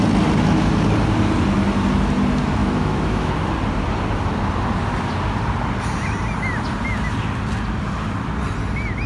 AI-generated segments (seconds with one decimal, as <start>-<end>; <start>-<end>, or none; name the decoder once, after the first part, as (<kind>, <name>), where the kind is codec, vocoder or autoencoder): 2.6-3.3 (autoencoder, DAC-VAE)